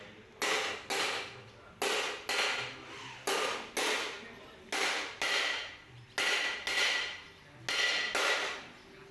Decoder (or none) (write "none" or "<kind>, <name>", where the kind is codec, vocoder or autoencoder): none